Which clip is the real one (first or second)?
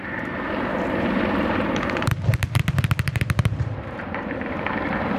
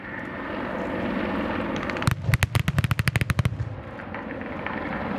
second